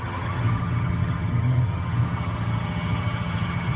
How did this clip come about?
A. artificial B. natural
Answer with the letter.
A